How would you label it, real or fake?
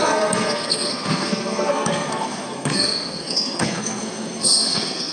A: fake